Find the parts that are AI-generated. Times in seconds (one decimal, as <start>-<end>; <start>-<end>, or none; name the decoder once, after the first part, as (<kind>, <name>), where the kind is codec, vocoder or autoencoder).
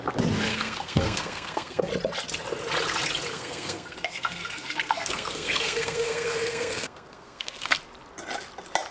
0.5-1.9 (codec, SNAC); 3.3-7.8